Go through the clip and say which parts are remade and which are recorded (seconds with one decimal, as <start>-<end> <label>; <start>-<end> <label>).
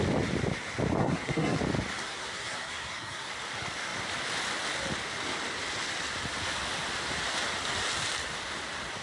0.0-1.0 recorded; 1.0-1.6 remade; 1.6-2.0 recorded; 2.0-3.3 remade; 3.3-9.0 recorded